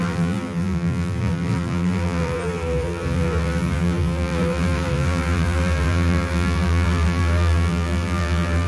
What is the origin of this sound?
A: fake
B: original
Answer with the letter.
A